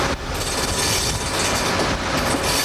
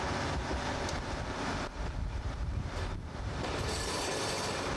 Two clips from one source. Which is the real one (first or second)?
first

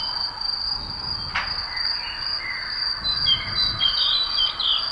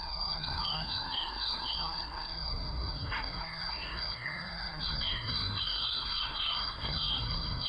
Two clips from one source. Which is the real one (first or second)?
first